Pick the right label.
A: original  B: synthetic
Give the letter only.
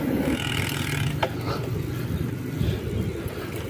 A